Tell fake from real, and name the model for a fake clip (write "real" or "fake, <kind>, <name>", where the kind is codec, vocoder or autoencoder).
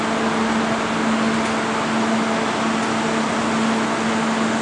real